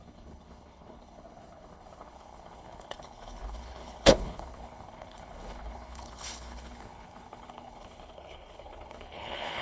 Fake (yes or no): yes